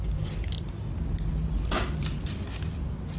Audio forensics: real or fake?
real